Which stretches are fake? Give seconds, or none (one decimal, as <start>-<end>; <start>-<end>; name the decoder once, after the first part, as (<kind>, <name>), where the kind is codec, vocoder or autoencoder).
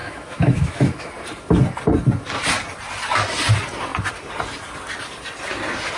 0.0-1.1 (autoencoder, DAC-VAE)